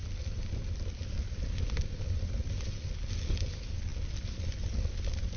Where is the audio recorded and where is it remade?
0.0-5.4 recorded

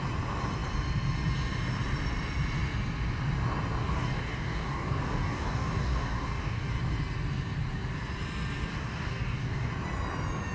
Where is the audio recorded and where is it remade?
0.0-3.8 recorded; 3.8-6.7 remade; 6.7-8.7 recorded; 8.7-9.7 remade; 9.7-10.5 recorded